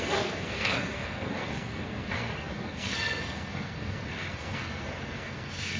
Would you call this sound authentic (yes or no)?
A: no